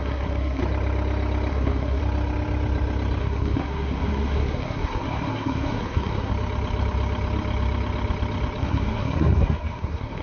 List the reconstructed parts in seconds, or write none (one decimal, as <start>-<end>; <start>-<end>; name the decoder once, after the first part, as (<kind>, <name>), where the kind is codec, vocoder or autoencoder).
0.0-0.6 (codec, SNAC); 1.5-2.0; 3.2-6.3; 8.6-10.2